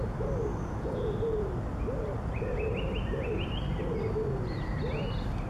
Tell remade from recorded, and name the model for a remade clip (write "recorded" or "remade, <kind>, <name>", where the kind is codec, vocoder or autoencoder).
recorded